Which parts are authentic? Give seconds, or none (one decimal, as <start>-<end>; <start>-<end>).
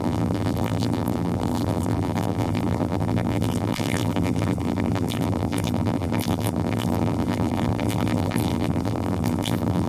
none